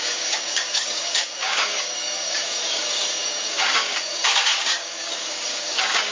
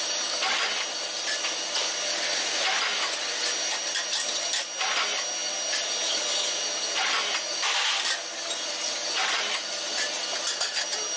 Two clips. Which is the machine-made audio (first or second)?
first